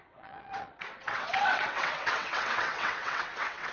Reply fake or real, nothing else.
fake